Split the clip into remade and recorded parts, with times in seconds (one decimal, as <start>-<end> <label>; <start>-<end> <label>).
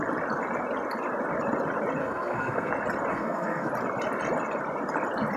0.0-2.0 recorded; 2.0-2.7 remade; 2.7-3.1 recorded; 3.1-3.7 remade; 3.7-5.4 recorded